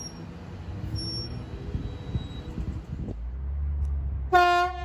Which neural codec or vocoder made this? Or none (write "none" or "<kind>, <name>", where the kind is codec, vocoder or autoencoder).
none